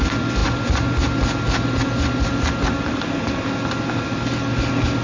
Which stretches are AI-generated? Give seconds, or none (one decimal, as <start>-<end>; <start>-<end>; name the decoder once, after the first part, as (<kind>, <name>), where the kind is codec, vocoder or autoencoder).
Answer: none